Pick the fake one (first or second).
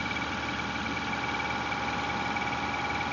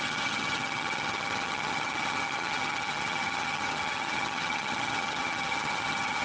second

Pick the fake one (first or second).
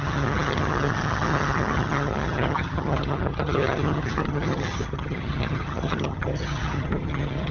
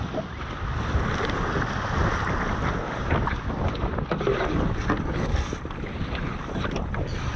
first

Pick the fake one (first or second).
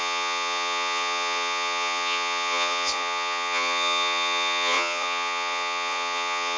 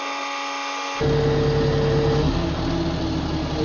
first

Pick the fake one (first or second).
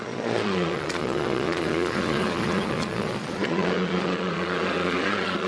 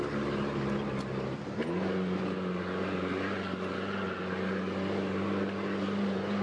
first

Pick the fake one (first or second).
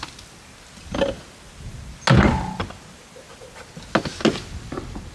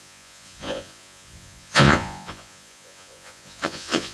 second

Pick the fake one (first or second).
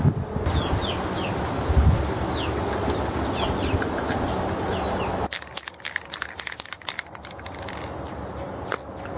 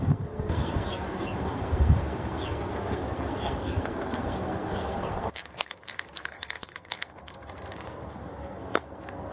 second